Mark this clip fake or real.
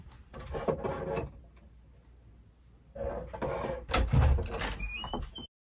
real